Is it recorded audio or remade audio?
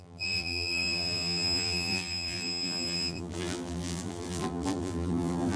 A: remade